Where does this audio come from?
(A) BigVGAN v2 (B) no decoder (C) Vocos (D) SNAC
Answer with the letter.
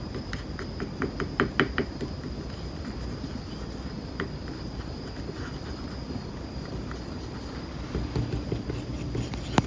B